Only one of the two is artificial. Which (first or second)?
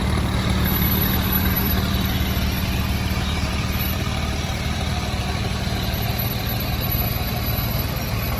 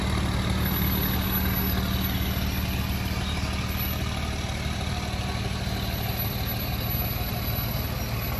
first